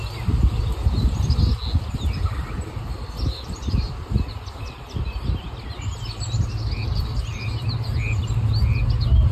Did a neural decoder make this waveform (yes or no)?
no